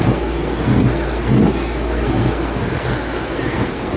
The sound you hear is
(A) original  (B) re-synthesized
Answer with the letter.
B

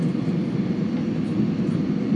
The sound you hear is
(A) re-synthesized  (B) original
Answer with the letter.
B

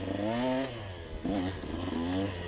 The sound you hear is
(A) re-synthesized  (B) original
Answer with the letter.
B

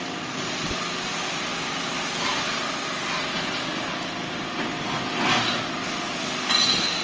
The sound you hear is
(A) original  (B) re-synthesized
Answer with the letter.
A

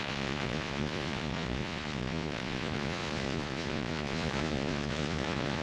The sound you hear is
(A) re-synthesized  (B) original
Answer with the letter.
A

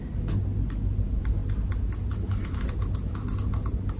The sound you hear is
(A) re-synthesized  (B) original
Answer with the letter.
B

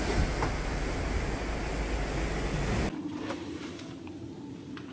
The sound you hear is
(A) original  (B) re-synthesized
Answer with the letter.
A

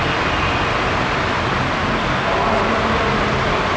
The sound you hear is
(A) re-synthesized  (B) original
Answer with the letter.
B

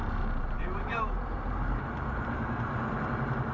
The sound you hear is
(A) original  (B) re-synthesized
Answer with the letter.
B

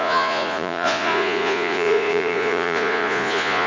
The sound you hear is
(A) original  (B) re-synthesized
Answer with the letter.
B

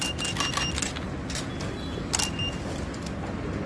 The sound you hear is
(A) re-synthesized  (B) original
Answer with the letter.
B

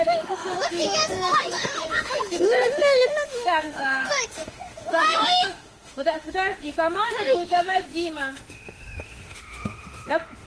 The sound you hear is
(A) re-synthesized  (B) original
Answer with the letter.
A